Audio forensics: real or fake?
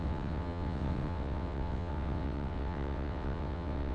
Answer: fake